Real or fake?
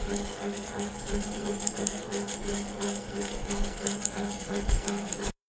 fake